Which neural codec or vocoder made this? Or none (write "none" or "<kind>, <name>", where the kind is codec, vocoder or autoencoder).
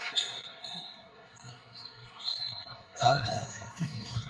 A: codec, SNAC